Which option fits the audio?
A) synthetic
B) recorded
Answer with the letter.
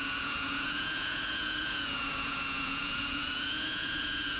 A